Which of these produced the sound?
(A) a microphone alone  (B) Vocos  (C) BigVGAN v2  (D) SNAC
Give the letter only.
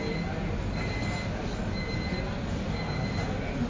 A